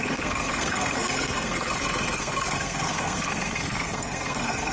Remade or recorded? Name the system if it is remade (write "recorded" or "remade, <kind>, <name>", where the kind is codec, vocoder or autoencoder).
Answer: remade, codec, SNAC